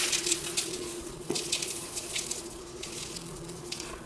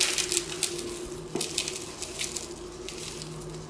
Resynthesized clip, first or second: first